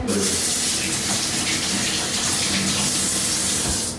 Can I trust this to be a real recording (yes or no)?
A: yes